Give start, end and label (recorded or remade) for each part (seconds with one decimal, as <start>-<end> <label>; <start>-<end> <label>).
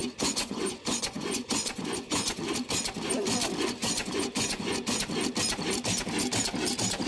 0.0-2.4 remade; 2.4-3.8 recorded; 3.8-5.0 remade; 5.0-7.1 recorded